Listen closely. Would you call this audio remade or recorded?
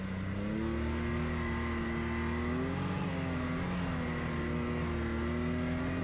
recorded